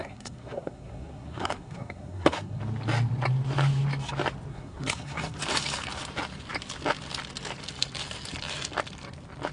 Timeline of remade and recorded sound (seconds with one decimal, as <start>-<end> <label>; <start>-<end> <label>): 0.0-2.6 remade; 2.6-4.5 recorded; 4.5-5.4 remade; 5.4-9.5 recorded